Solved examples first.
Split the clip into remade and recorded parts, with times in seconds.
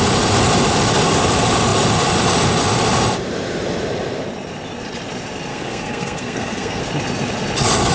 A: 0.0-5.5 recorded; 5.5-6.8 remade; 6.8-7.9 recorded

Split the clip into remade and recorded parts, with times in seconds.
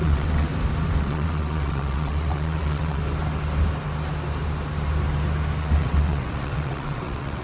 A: 0.0-0.5 remade; 0.5-1.0 recorded; 1.0-3.0 remade; 3.0-5.6 recorded; 5.6-7.4 remade